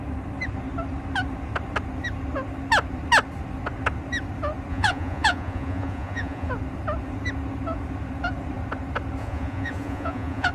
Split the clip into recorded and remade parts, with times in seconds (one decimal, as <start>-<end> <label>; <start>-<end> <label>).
0.0-4.7 recorded; 4.7-6.5 remade; 6.5-9.2 recorded; 9.2-10.5 remade